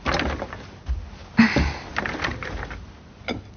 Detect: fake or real real